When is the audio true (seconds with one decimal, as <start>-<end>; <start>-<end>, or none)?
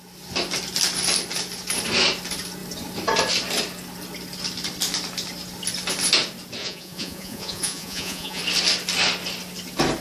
0.0-6.6; 8.4-10.0